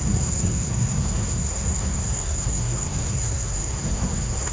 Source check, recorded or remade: remade